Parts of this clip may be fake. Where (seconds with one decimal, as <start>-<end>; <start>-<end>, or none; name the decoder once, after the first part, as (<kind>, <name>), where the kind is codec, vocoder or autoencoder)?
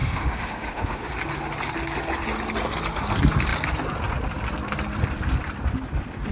0.0-1.1 (autoencoder, DAC-VAE)